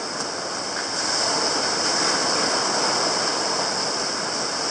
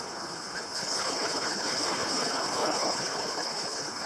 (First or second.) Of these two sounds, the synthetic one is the second